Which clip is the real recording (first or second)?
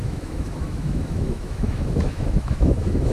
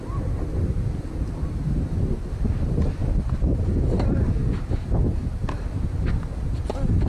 second